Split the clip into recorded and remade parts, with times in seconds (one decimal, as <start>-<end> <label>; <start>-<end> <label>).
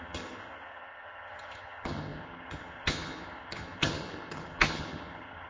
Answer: 0.0-5.5 remade